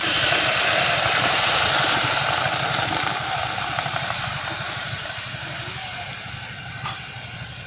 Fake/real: fake